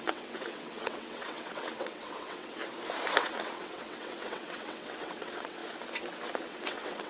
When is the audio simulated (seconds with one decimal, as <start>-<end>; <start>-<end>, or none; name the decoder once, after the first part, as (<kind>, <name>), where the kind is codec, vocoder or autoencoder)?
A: 0.0-2.6 (vocoder, WaveNeXt); 3.2-5.6; 6.5-7.1

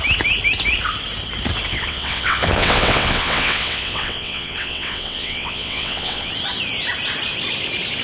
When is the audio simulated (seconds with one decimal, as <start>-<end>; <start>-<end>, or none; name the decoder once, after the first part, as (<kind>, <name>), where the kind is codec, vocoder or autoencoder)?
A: 1.7-6.3 (vocoder, WaveNeXt)

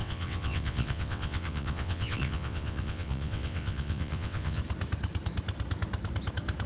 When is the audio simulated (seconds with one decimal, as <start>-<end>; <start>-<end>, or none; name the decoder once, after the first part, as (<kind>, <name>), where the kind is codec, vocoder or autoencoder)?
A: 0.0-4.6 (vocoder, WaveNeXt)

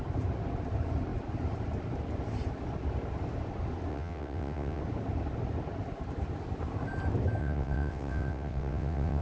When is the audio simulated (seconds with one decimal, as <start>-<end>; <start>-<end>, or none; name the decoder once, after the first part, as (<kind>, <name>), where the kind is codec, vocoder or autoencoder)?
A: 3.9-4.8 (vocoder, WaveNeXt); 7.4-9.2